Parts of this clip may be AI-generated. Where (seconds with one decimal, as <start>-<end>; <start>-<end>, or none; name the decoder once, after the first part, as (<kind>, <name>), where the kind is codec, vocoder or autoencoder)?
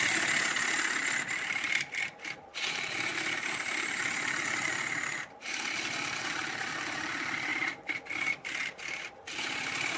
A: 1.0-2.0 (vocoder, BigVGAN v2)